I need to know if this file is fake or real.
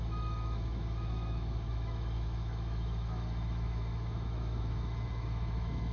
fake